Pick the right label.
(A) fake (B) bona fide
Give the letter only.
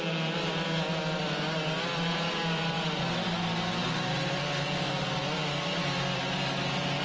B